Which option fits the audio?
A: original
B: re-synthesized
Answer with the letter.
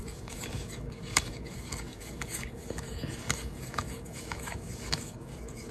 B